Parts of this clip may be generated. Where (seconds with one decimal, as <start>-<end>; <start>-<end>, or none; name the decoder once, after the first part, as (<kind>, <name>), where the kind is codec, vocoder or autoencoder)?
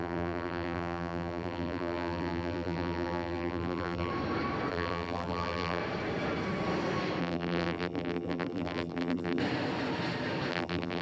0.0-4.1 (vocoder, BigVGAN v2); 4.7-5.8; 7.2-9.4; 10.5-11.0